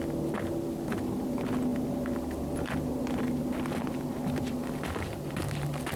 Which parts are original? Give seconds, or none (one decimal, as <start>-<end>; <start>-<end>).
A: 0.0-6.0